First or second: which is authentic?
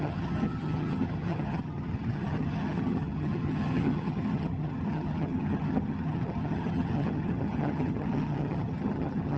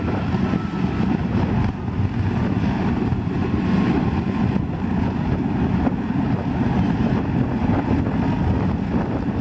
second